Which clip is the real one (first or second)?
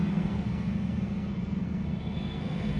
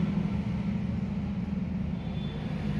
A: second